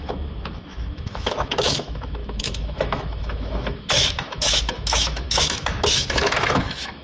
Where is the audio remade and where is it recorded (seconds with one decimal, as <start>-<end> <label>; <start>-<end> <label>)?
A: 0.0-7.0 remade